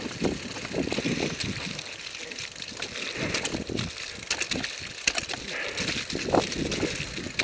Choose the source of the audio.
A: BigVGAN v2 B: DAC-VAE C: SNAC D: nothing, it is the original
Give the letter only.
D